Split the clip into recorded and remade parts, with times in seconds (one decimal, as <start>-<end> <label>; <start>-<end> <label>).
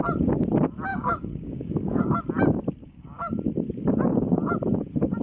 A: 0.0-0.9 recorded; 0.9-2.2 remade; 2.2-2.8 recorded; 2.8-3.4 remade; 3.4-5.2 recorded